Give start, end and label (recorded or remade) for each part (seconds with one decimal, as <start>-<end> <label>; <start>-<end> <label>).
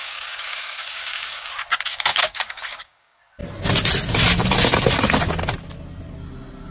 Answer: 0.0-1.5 remade; 1.5-2.1 recorded; 2.1-3.2 remade; 3.2-6.7 recorded